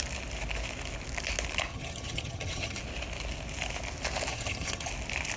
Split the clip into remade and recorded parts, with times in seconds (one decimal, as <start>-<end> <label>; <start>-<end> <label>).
0.0-1.7 recorded; 1.7-2.8 remade; 2.8-4.3 recorded; 4.3-4.9 remade; 4.9-5.4 recorded